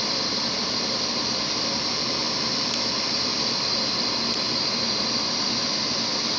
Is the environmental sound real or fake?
real